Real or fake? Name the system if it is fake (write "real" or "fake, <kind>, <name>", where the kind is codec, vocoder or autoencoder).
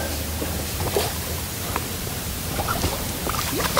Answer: fake, vocoder, BigVGAN v2